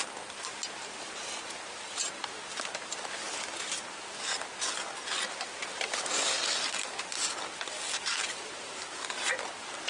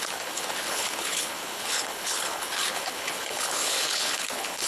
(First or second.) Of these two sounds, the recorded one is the first